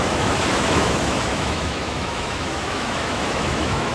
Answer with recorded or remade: remade